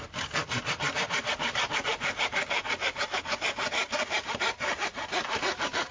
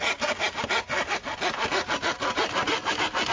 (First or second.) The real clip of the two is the second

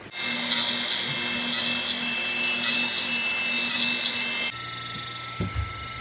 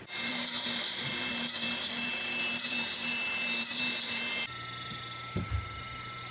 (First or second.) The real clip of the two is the first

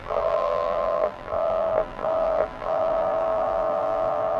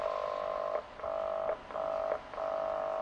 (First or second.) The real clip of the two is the second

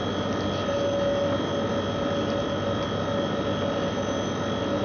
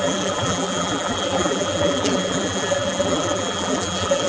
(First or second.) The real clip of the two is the first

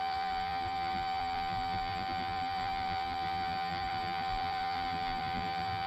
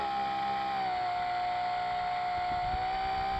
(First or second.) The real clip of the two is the second